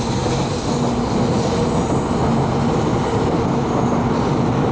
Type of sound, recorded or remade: recorded